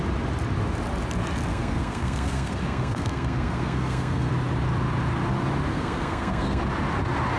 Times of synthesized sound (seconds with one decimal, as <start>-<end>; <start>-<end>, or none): 1.5-4.3; 5.7-6.6